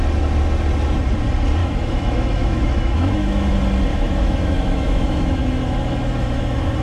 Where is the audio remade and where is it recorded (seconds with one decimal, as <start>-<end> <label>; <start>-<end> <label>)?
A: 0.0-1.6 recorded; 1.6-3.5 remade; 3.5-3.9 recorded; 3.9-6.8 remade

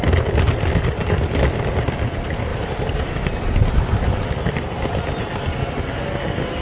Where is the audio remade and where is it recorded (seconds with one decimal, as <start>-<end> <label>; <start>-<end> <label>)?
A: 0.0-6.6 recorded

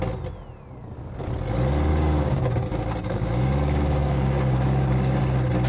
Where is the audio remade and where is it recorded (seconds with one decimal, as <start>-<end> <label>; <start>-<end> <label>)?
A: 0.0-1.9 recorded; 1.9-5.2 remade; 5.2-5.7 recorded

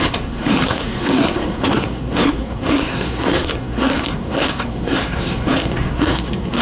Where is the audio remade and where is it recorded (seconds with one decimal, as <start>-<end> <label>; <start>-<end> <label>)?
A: 0.0-6.6 remade